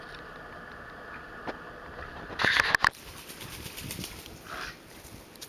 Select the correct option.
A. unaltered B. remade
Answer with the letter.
A